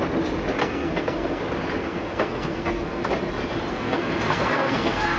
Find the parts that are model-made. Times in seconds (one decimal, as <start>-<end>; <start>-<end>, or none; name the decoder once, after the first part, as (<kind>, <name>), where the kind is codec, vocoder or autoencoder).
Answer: 0.6-1.4 (codec, SNAC); 1.8-3.1; 3.7-5.2